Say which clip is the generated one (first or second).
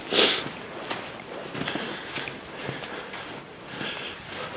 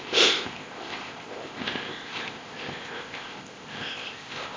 second